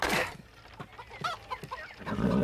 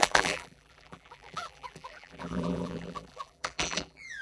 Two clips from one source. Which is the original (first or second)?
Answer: first